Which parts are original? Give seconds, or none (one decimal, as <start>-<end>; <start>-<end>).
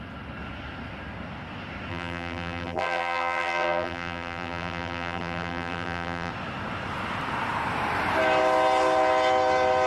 0.0-1.9; 6.3-9.9